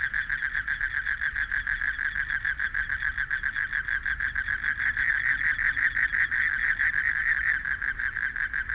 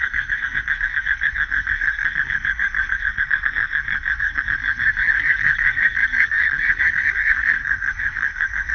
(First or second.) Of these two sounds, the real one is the first